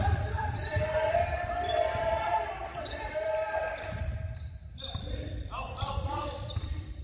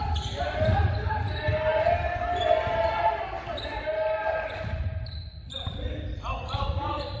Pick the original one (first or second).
second